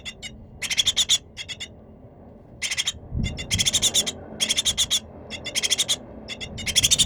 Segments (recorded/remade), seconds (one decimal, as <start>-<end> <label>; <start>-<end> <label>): 0.0-7.1 recorded